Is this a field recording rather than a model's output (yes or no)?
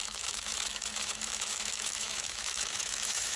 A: no